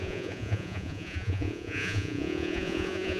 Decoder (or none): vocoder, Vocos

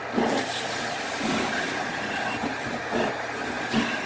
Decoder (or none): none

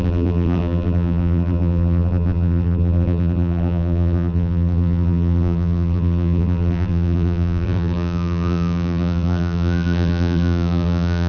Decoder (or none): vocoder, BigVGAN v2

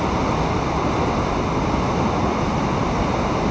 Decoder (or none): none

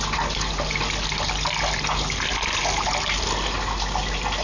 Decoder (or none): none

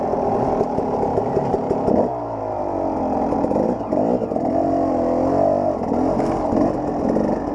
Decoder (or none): none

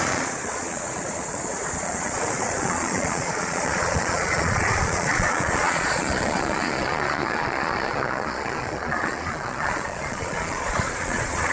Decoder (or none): vocoder, Vocos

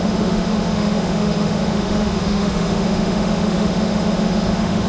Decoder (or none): autoencoder, DAC-VAE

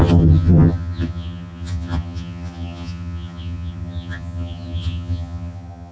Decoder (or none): vocoder, HiFi-GAN